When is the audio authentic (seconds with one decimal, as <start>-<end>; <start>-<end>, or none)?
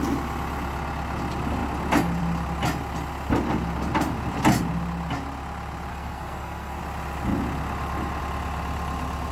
0.0-5.9; 6.8-9.3